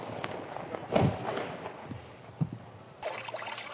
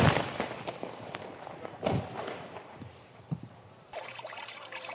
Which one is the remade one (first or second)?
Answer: second